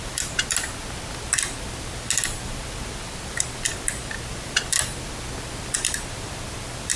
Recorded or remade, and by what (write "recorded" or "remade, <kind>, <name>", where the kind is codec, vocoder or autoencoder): recorded